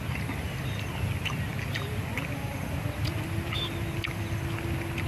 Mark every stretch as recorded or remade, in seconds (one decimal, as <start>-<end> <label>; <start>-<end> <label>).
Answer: 0.0-5.1 recorded